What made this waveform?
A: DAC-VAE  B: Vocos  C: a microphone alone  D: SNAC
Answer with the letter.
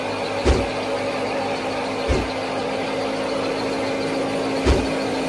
C